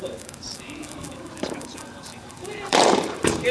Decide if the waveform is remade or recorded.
remade